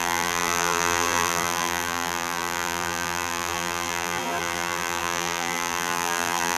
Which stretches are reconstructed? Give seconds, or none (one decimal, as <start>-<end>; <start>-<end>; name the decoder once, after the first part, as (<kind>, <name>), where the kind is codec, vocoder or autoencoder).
0.0-6.6 (vocoder, BigVGAN v2)